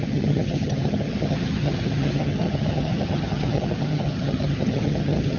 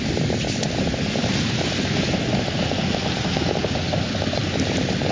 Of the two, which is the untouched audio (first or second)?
second